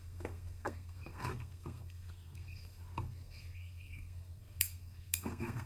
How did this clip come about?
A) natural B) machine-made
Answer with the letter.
B